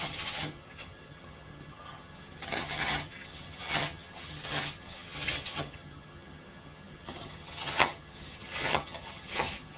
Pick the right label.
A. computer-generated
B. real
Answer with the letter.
A